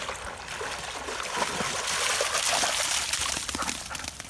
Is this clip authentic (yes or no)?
yes